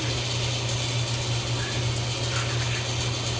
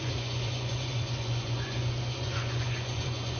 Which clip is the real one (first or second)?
first